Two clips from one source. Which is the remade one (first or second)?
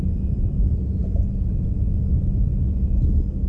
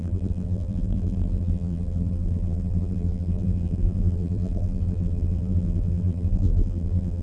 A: second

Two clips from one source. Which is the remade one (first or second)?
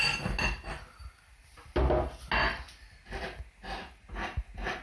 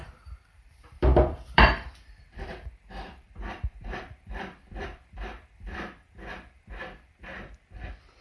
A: second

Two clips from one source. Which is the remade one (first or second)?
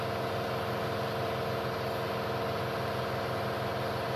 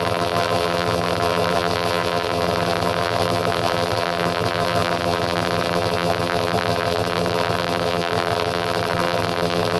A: second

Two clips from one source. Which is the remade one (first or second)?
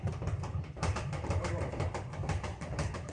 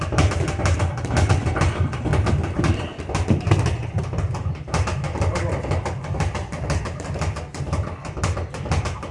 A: first